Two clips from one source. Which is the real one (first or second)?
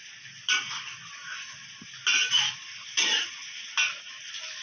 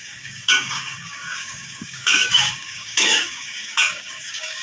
first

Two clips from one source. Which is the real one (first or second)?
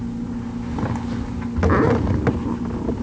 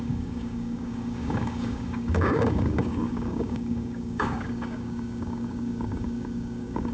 first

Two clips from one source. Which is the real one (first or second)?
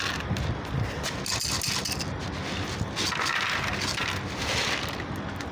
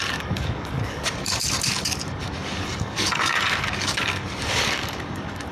first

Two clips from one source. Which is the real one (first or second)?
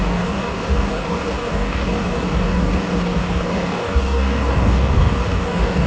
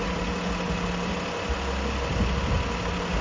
second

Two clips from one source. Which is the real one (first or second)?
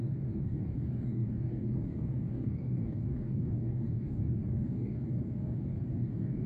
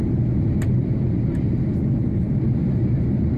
second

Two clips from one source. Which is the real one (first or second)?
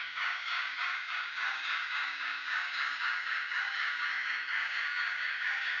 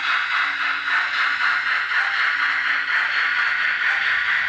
second